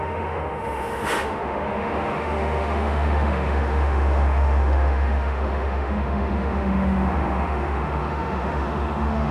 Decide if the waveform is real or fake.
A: fake